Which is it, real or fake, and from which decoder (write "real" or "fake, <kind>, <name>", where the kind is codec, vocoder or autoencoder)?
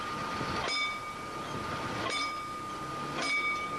real